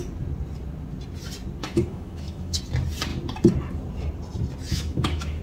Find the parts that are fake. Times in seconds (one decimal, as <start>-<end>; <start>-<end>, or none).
1.6-2.6; 4.7-5.4